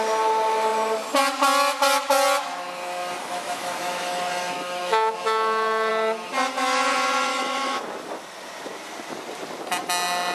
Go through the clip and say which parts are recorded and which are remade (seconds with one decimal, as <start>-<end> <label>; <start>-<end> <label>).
0.0-3.2 recorded; 3.2-5.9 remade; 5.9-7.3 recorded; 7.3-7.8 remade; 7.8-10.3 recorded